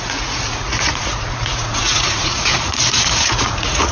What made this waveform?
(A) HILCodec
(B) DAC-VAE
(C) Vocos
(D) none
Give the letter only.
C